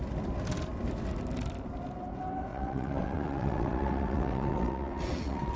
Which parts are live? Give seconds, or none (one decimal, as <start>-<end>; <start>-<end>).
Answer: 0.0-2.5